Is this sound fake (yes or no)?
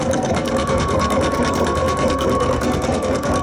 yes